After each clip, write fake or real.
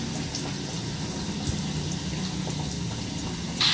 real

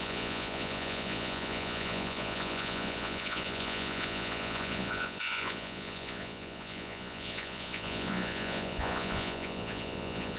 fake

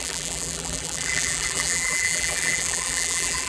fake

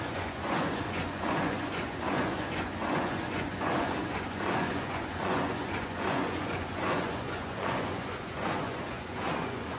fake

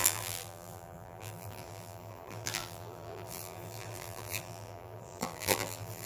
fake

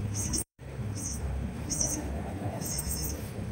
fake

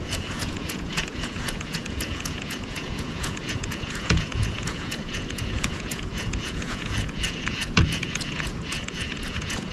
fake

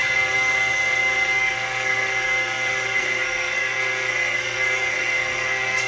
fake